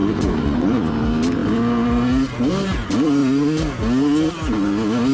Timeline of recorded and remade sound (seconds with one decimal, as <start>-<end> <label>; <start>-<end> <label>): 0.0-0.9 remade; 0.9-5.1 recorded